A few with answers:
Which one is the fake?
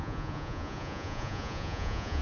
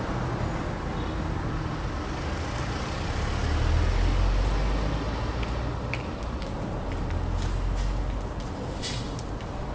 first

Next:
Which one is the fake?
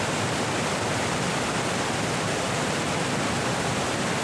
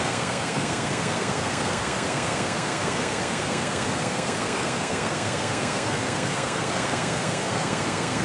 second